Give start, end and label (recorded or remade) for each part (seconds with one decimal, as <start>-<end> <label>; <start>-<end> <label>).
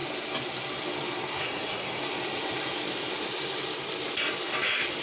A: 0.0-1.4 recorded; 1.4-2.0 remade; 2.0-5.0 recorded